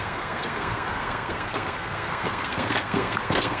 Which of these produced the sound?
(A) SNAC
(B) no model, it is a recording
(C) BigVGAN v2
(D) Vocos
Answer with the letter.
A